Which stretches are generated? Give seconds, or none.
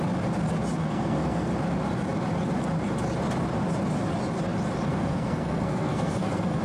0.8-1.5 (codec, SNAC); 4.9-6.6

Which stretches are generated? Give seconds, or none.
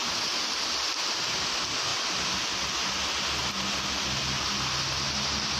none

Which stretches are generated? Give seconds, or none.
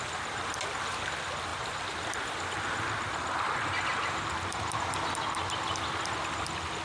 none